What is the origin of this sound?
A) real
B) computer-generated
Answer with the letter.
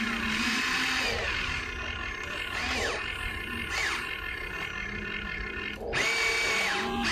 A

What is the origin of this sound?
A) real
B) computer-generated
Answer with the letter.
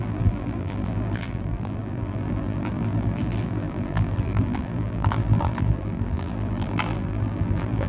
B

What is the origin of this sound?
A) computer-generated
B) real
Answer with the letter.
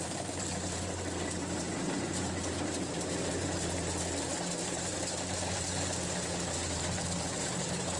A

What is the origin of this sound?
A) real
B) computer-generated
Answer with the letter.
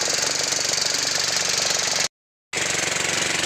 A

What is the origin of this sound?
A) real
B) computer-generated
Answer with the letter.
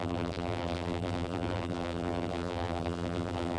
B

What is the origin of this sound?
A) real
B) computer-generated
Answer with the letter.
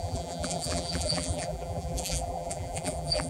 B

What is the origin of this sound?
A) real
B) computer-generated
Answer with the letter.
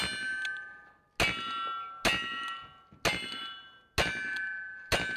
A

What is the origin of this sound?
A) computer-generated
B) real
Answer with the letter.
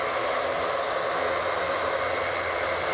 B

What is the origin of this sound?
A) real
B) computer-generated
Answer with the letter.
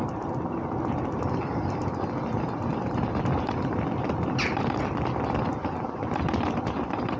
B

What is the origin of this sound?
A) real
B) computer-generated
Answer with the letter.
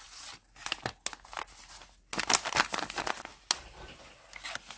A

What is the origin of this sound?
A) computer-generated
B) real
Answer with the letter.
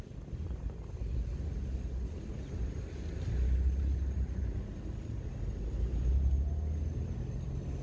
B